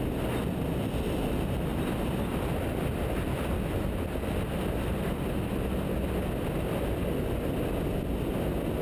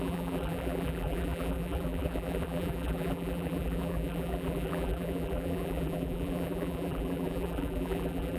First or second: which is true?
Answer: first